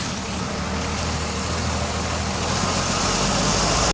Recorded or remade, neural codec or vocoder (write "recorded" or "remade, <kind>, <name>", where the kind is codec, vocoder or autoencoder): recorded